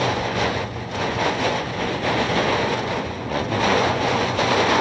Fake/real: fake